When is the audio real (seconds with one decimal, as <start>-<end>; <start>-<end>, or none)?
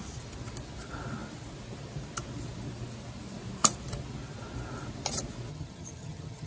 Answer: 0.0-5.5